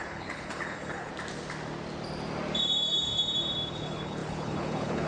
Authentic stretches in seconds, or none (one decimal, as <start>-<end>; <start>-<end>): 1.1-3.7